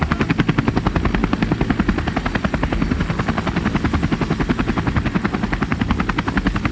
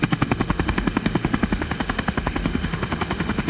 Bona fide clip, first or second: first